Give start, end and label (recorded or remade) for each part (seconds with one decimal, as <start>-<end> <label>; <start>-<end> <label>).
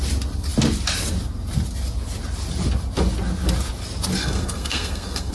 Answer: 0.0-4.2 recorded; 4.2-5.3 remade